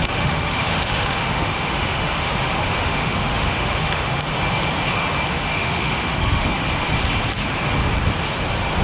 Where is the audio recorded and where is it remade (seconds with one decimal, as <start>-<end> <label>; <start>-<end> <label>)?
0.0-4.2 remade; 4.2-5.5 recorded; 5.5-6.5 remade; 6.5-8.8 recorded